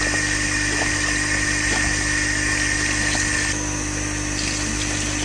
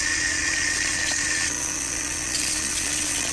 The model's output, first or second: second